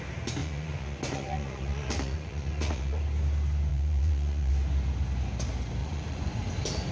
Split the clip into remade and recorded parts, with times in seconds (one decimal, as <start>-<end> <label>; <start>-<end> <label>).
0.0-0.4 recorded; 0.4-3.0 remade; 3.0-3.7 recorded; 3.7-4.5 remade; 4.5-5.8 recorded; 5.8-6.4 remade; 6.4-6.9 recorded